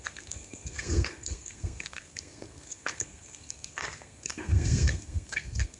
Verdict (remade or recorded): remade